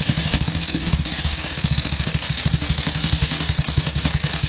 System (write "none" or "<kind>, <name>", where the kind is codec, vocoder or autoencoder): codec, DAC